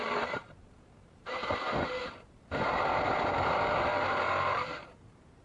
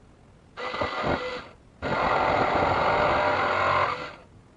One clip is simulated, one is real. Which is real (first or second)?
second